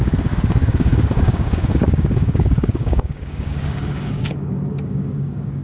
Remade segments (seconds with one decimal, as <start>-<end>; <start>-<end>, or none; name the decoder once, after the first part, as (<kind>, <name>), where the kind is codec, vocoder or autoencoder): 0.0-5.6 (codec, DAC)